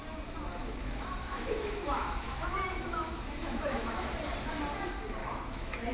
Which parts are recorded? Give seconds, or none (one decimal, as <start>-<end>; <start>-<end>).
0.0-0.6; 4.1-5.2